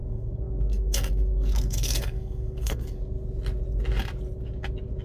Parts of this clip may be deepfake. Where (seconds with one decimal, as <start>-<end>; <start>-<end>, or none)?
0.0-3.0